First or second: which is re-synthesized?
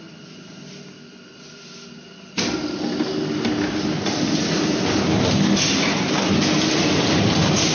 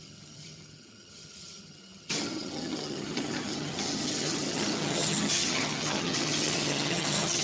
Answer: second